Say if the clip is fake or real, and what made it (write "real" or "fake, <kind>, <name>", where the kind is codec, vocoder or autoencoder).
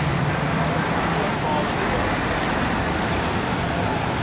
real